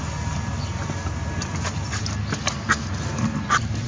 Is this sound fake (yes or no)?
no